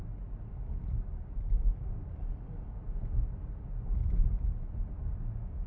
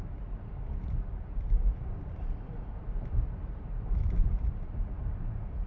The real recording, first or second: first